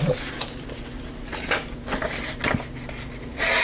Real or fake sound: real